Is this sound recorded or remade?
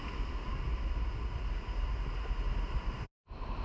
recorded